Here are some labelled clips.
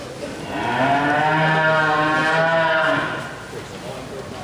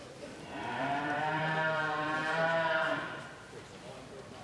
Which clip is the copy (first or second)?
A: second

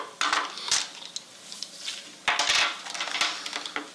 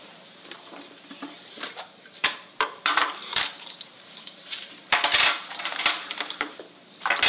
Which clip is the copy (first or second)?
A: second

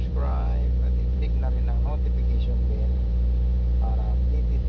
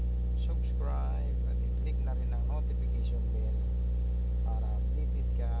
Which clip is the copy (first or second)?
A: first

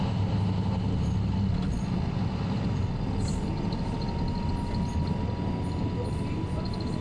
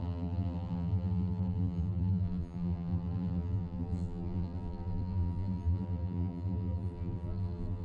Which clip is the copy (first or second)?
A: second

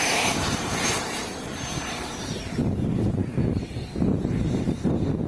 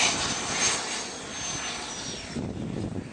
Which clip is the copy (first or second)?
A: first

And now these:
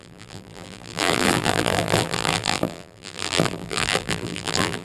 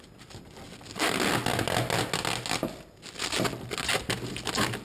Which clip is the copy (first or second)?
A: first